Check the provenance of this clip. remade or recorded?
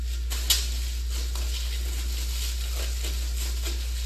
recorded